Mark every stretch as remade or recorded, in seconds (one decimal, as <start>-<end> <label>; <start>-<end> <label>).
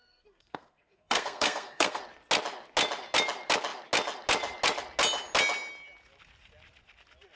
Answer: 0.0-2.0 remade; 2.0-7.4 recorded